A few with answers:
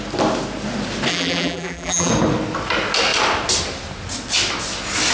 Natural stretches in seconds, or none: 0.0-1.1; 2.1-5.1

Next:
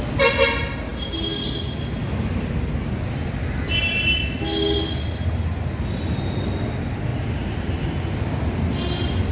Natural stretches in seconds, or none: 0.0-7.1; 7.7-9.3

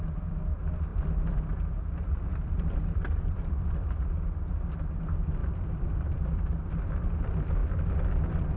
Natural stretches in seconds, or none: 0.0-2.3; 3.5-5.4; 6.7-7.6; 8.2-8.6

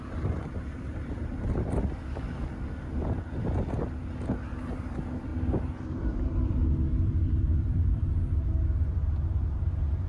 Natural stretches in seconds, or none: 0.0-5.3; 8.1-10.1

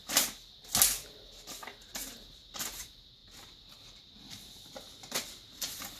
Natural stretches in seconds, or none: 0.0-6.0